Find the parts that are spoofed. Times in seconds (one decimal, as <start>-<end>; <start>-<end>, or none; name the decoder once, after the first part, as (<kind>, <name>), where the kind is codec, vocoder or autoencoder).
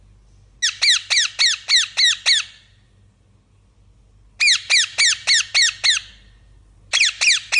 none